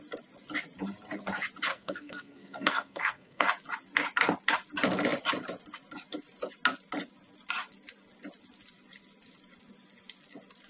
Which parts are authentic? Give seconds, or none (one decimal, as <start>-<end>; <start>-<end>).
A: 0.0-1.7; 3.5-10.7